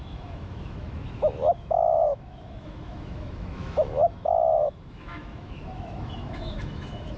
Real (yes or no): no